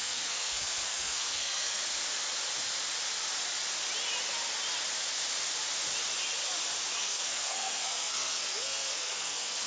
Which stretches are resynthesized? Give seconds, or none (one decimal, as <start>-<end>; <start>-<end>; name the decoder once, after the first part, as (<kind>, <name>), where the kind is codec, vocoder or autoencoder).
0.0-1.8 (codec, SNAC); 7.0-9.7